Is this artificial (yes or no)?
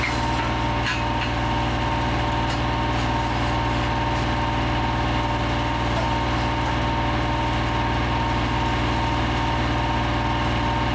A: no